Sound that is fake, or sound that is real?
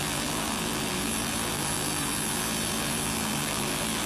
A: fake